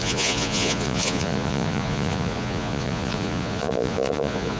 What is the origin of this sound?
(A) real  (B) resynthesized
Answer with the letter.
B